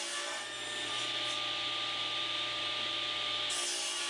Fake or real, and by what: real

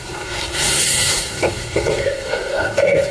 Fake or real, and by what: fake, codec, SNAC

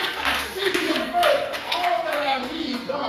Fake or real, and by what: fake, codec, SNAC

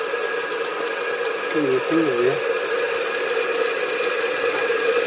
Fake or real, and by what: real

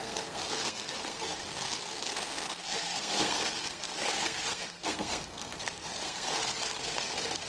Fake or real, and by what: fake, codec, SNAC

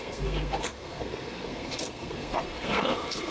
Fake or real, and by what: fake, codec, SNAC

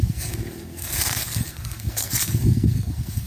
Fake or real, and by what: fake, codec, SNAC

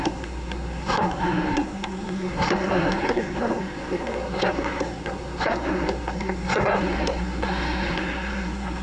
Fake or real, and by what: fake, codec, SNAC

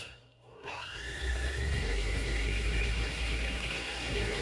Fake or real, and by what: fake, codec, SNAC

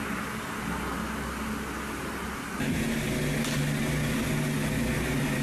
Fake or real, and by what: real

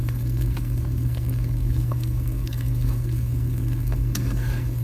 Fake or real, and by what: fake, codec, SNAC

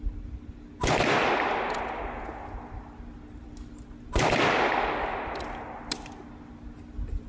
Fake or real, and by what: real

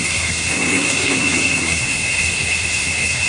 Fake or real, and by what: fake, codec, SNAC